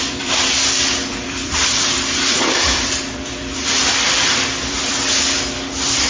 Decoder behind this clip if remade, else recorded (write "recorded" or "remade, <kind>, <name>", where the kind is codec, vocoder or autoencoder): remade, vocoder, BigVGAN v2